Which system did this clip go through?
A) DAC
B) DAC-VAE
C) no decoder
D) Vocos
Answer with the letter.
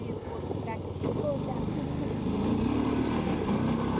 C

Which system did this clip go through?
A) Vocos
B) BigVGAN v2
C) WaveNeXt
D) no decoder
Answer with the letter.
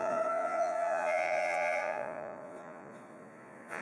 A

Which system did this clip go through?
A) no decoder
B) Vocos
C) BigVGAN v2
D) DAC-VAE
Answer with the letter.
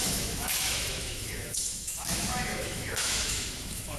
D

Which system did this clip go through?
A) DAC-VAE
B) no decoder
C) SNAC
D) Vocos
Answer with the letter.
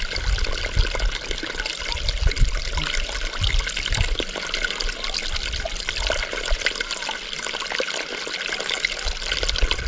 B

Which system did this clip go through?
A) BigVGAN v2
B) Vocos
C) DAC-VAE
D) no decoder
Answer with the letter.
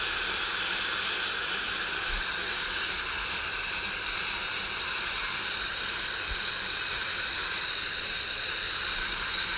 D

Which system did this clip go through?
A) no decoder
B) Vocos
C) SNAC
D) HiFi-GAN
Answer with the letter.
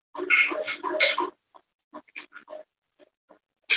A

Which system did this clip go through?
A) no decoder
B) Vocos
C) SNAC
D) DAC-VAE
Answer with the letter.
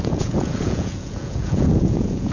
B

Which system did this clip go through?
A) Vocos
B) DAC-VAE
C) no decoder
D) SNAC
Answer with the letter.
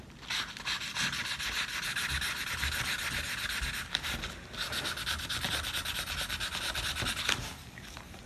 C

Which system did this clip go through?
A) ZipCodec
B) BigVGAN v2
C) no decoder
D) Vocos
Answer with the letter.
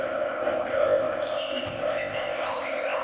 A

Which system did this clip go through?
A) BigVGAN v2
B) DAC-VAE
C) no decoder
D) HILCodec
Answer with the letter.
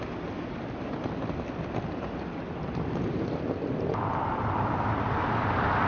A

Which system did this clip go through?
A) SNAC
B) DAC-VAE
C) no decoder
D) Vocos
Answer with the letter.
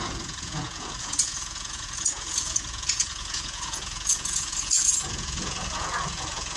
D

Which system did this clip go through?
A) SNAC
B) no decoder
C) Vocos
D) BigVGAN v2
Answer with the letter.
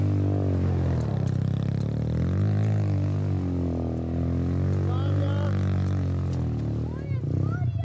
B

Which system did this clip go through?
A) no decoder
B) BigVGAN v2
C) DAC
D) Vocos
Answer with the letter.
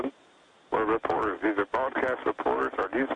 A